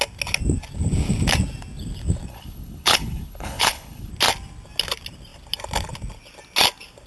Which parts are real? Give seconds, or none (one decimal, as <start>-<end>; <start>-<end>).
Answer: 0.0-2.3; 4.1-7.1